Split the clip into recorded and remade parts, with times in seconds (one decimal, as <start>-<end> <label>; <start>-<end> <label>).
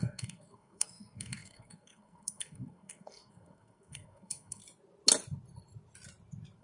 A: 0.0-4.6 remade; 4.6-6.6 recorded